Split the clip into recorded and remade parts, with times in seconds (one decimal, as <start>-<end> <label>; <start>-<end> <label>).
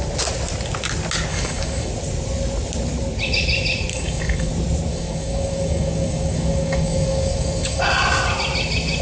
0.0-1.3 recorded; 1.3-1.9 remade; 1.9-3.9 recorded; 3.9-4.5 remade; 4.5-4.9 recorded; 4.9-7.8 remade; 7.8-9.0 recorded